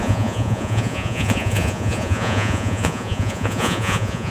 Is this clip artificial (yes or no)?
yes